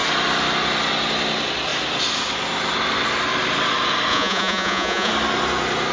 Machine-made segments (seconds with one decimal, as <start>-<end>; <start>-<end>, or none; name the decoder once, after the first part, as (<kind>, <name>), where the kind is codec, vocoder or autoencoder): 4.1-5.1 (vocoder, Vocos)